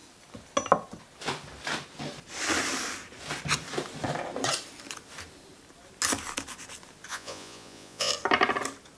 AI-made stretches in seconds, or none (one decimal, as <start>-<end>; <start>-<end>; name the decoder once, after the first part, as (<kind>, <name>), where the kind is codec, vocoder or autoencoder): 7.1-8.1 (vocoder, Vocos)